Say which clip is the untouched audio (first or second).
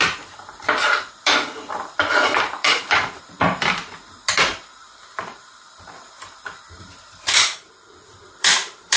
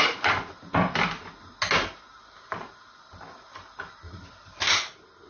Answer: second